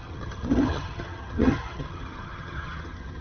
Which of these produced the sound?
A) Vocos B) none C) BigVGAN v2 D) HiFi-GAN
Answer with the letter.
D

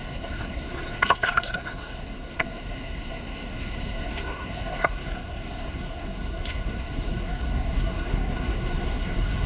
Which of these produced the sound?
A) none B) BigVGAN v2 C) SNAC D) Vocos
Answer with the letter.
C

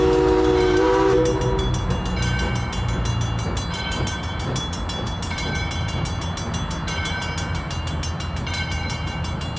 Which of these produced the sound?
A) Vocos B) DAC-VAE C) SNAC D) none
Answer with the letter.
D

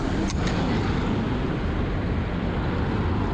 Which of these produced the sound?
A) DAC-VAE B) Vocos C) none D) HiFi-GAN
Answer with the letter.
C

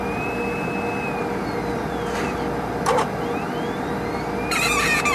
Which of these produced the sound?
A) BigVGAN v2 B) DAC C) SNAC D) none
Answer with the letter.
D